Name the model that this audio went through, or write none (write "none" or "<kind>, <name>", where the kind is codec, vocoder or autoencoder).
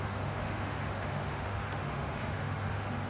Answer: autoencoder, DAC-VAE